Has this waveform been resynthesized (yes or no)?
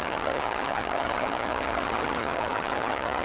yes